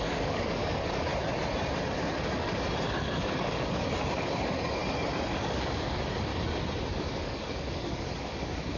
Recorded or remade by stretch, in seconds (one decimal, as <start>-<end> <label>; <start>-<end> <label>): 0.0-1.1 remade; 1.1-2.0 recorded; 2.0-4.8 remade; 4.8-5.3 recorded; 5.3-6.3 remade; 6.3-6.9 recorded; 6.9-8.8 remade